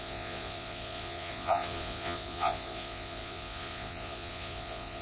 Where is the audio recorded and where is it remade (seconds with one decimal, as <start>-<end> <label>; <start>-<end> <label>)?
0.0-5.0 remade

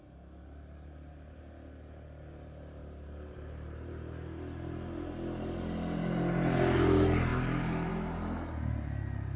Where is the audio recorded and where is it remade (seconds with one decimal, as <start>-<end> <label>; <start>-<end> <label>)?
0.0-2.8 recorded; 2.8-3.9 remade; 3.9-9.4 recorded

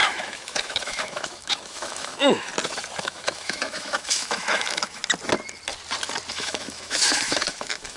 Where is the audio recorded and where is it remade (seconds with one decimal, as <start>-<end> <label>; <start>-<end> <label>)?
0.0-2.5 remade; 2.5-3.0 recorded; 3.0-5.0 remade; 5.0-6.3 recorded; 6.3-8.0 remade

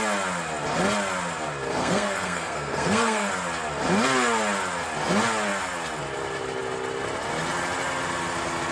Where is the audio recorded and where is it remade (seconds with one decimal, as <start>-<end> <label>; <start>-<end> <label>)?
0.0-1.8 recorded; 1.8-3.3 remade; 3.3-8.7 recorded